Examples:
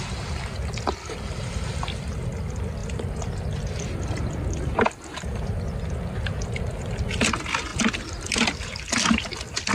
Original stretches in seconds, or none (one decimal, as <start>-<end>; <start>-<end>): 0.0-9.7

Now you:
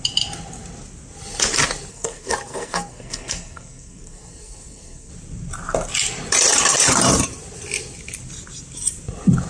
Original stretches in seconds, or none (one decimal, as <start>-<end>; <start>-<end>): 0.0-1.9; 5.1-9.5

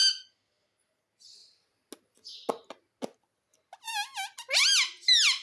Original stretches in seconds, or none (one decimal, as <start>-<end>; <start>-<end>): 0.0-5.4